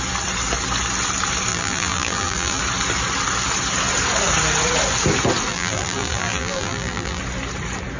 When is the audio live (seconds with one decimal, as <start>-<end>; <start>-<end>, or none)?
0.0-1.5; 2.6-5.5; 7.2-8.0